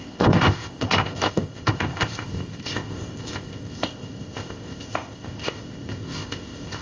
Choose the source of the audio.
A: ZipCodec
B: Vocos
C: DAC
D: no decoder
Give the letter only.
A